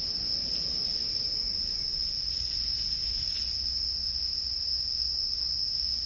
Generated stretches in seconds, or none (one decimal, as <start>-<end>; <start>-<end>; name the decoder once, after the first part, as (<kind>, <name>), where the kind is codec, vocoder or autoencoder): 1.9-2.7 (vocoder, Vocos)